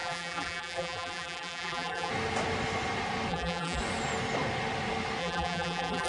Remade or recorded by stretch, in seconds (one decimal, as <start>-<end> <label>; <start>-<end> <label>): 0.0-2.1 remade; 2.1-3.3 recorded; 3.3-3.8 remade; 3.8-5.2 recorded; 5.2-6.1 remade